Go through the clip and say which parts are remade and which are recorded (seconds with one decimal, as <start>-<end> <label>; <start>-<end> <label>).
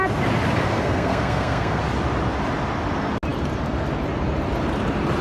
0.0-0.7 recorded; 0.7-1.8 remade; 1.8-5.2 recorded